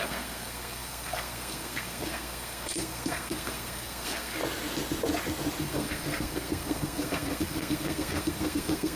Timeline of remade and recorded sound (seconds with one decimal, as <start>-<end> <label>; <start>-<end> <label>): 0.0-4.4 remade; 4.4-5.6 recorded; 5.6-9.0 remade